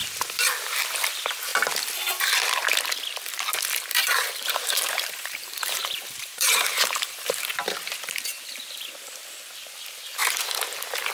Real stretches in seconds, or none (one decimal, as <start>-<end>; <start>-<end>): 0.0-3.9; 7.4-11.1